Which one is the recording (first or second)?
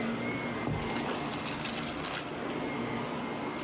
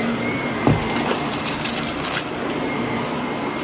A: first